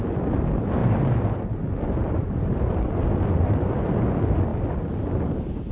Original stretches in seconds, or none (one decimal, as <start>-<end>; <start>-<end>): 0.0-0.8; 1.4-2.0; 2.8-5.7